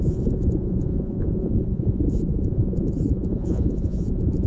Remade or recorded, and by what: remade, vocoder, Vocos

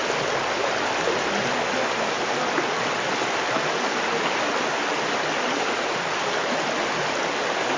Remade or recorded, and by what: recorded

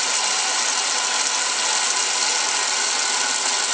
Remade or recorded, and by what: recorded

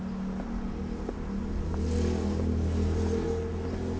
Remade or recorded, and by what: recorded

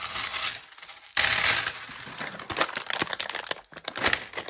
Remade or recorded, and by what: recorded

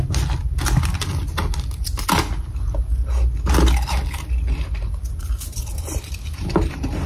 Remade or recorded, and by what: recorded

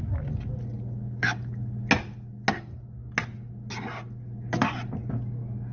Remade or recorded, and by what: recorded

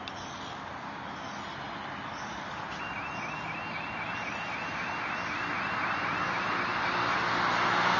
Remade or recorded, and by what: recorded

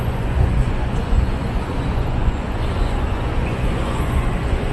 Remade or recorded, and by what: remade, vocoder, Vocos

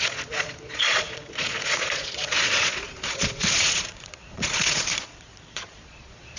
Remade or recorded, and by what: remade, vocoder, Vocos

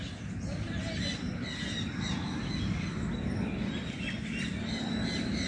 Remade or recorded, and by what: recorded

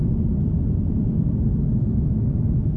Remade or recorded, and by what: recorded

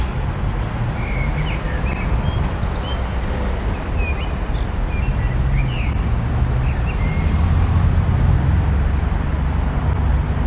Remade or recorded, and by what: recorded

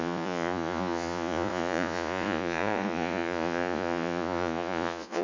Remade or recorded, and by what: remade, vocoder, Vocos